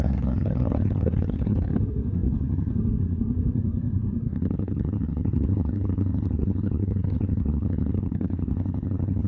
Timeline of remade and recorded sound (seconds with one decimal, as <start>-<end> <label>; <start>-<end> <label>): 0.0-9.3 remade